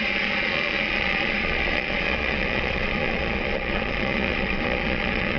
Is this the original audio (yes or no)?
no